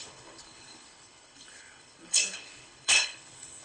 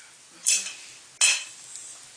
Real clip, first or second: second